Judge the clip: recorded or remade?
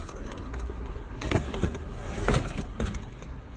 remade